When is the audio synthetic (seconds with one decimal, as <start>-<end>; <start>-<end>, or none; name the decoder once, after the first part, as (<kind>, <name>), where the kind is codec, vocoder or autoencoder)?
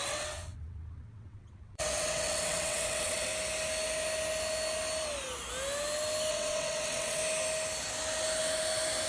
0.0-3.3 (vocoder, WaveNeXt); 6.3-7.2